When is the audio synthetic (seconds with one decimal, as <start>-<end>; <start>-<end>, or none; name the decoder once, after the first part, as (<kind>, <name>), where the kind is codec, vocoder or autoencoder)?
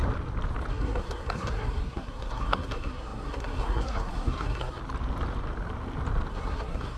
0.7-4.8 (codec, SNAC); 6.3-7.0